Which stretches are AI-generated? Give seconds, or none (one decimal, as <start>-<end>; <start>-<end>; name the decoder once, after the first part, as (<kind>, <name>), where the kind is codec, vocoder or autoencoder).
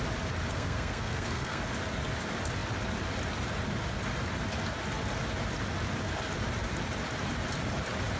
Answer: 0.5-1.6 (codec, SNAC)